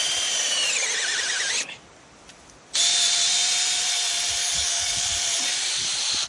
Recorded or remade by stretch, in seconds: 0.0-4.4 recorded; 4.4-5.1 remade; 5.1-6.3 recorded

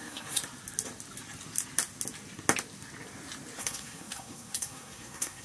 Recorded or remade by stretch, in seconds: 0.0-0.4 remade; 0.4-3.6 recorded; 3.6-5.4 remade

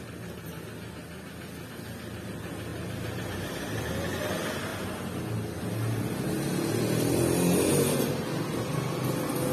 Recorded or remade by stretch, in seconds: 0.0-9.5 recorded

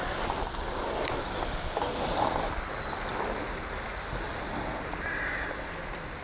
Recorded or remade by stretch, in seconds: 0.0-6.2 recorded